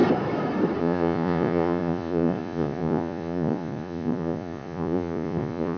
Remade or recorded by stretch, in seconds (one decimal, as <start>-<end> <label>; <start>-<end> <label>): 0.0-0.8 recorded; 0.8-5.8 remade